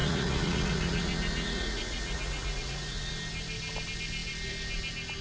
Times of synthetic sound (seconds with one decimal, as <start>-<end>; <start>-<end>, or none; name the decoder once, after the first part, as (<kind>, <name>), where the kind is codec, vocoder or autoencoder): 0.0-3.1 (vocoder, Vocos)